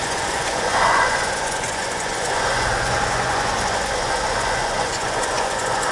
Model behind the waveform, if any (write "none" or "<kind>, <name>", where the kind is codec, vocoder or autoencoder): vocoder, Vocos